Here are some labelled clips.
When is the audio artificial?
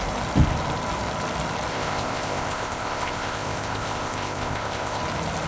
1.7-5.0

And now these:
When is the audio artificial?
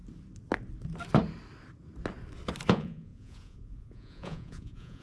2.7-5.0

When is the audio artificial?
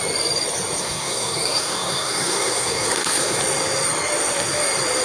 0.8-3.4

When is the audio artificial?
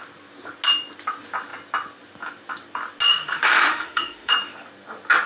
3.1-4.3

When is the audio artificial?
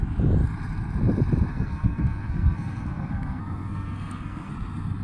1.5-4.5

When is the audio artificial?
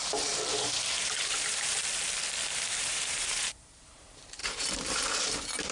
0.0-1.8; 2.5-5.7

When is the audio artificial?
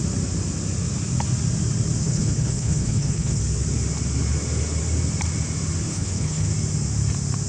2.0-3.4; 5.9-6.5